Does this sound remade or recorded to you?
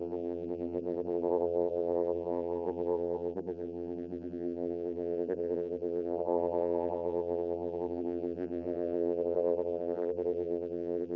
remade